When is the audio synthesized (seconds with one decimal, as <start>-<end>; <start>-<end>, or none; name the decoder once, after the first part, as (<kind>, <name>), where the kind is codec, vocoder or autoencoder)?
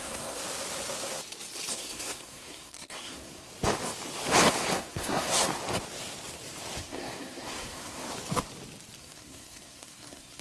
0.0-0.4 (codec, SNAC); 1.7-3.5; 4.7-5.5; 6.8-8.1; 9.0-10.4